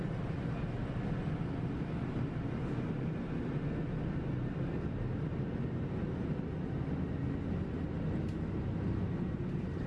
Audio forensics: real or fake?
real